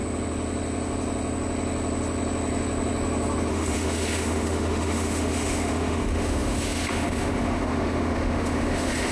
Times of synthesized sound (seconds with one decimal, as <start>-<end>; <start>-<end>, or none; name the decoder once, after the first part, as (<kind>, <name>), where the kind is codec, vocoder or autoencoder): 3.5-9.1 (autoencoder, DAC-VAE)

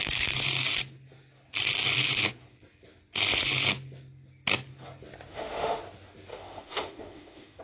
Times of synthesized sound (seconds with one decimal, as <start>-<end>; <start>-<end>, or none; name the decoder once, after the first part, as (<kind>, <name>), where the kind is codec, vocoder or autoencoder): 5.3-5.8 (autoencoder, DAC-VAE); 6.3-7.6

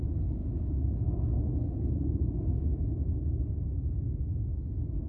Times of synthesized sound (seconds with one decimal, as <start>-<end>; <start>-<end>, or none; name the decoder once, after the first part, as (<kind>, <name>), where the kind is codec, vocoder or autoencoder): 0.4-3.5 (autoencoder, DAC-VAE)

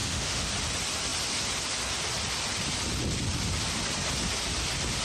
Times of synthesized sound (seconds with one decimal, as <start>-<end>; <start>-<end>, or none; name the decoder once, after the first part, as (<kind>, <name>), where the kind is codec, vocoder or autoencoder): 0.0-0.5 (autoencoder, DAC-VAE)

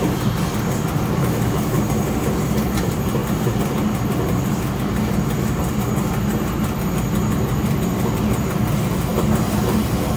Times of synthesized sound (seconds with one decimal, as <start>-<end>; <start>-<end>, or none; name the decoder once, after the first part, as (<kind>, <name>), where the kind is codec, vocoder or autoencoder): 1.2-1.8 (autoencoder, DAC-VAE)

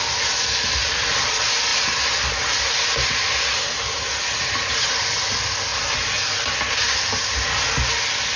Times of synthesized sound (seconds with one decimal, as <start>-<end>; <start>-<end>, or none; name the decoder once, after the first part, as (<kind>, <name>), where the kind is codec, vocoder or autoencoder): none

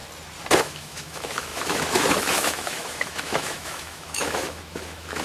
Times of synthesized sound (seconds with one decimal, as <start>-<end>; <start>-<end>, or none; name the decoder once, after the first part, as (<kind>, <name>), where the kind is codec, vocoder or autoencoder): 0.6-5.2 (autoencoder, DAC-VAE)